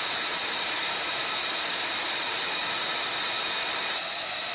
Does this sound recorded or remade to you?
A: recorded